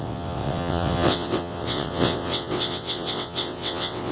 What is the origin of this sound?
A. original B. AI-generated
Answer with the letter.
B